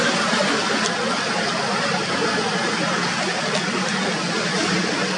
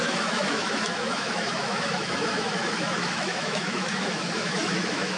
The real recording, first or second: first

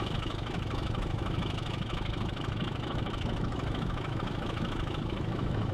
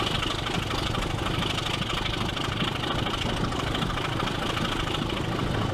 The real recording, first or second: second